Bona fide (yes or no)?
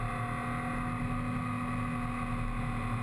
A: yes